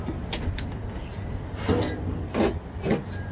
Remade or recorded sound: recorded